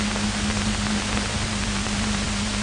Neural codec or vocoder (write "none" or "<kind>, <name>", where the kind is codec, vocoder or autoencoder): none